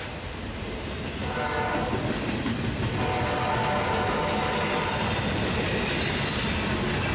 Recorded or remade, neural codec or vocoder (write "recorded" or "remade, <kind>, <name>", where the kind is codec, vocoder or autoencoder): recorded